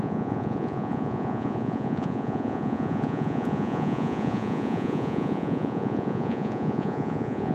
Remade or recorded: remade